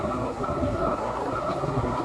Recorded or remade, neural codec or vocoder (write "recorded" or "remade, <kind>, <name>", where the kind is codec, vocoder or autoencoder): remade, codec, SNAC